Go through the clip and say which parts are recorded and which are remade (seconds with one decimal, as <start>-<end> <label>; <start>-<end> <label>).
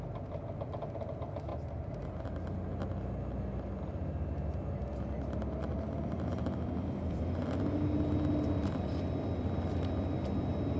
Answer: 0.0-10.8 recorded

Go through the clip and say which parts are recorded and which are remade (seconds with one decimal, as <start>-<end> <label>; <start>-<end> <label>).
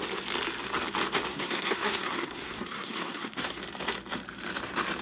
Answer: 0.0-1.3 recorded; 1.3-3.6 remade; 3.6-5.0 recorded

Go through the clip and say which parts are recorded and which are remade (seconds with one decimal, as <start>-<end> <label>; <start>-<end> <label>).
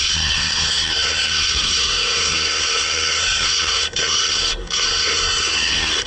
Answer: 0.0-6.1 remade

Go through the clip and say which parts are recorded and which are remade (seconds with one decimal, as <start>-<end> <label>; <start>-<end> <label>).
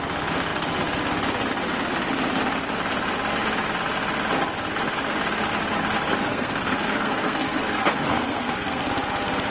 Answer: 0.0-6.3 recorded; 6.3-8.9 remade; 8.9-9.5 recorded